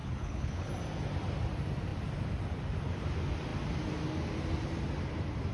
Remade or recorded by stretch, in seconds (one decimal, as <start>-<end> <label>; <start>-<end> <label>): 0.0-0.7 remade; 0.7-5.5 recorded